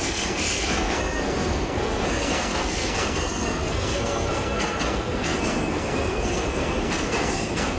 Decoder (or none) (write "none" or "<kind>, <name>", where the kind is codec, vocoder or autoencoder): codec, SNAC